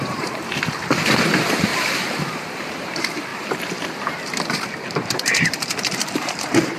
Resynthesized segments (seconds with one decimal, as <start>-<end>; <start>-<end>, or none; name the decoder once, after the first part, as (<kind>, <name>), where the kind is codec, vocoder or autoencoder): 0.0-1.7 (vocoder, BigVGAN v2); 2.4-6.8